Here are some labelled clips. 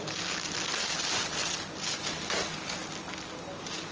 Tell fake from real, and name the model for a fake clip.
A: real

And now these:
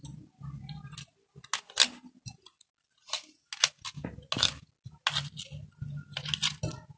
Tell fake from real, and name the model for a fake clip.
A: real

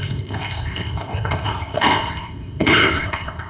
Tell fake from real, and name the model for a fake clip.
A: fake, codec, ZipCodec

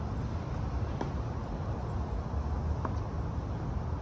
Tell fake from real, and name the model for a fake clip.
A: real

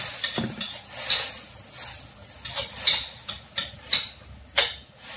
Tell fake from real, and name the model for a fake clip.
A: real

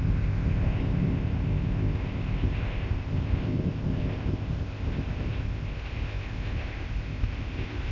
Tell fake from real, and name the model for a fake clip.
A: fake, codec, ZipCodec